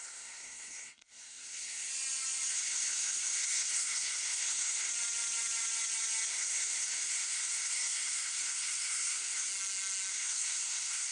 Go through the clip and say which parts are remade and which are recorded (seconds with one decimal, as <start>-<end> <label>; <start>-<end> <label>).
0.0-1.9 remade; 1.9-2.5 recorded; 2.5-4.9 remade; 4.9-6.3 recorded; 6.3-9.5 remade; 9.5-10.1 recorded; 10.1-11.1 remade